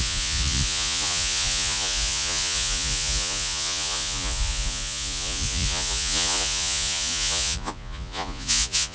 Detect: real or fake fake